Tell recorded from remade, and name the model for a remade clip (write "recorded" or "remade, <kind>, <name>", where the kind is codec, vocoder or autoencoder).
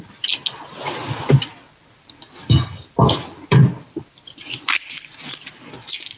recorded